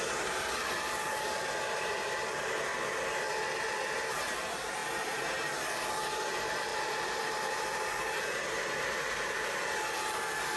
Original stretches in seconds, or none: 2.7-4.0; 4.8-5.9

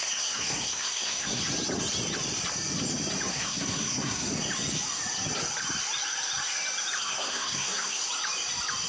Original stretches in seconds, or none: 1.4-3.3; 4.3-7.0; 8.0-8.9

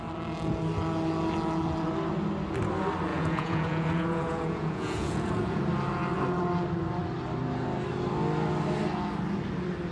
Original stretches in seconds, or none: 0.0-3.1; 5.6-9.9